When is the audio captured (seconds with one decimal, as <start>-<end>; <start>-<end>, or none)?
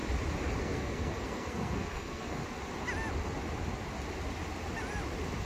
0.0-0.6; 2.4-5.4